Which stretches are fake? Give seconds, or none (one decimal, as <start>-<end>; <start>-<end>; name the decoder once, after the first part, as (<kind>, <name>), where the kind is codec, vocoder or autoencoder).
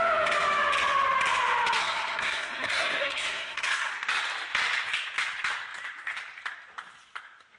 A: 1.8-3.9 (codec, SNAC)